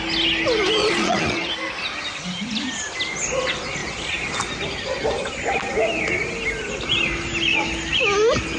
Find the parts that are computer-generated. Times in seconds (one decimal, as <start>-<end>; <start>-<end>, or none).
0.8-1.5